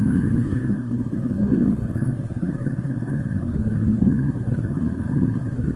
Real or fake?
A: fake